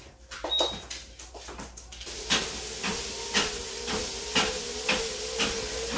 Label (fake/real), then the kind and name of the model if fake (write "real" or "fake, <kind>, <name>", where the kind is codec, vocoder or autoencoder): real